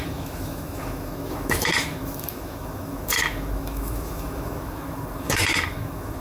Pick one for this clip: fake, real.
fake